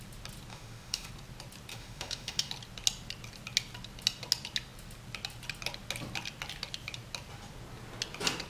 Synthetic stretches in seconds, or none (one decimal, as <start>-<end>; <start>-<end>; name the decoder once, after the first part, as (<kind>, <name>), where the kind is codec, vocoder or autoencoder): 0.5-1.1 (autoencoder, DAC-VAE); 1.7-2.5